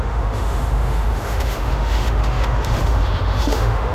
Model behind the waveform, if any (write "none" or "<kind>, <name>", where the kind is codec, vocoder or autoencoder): autoencoder, DAC-VAE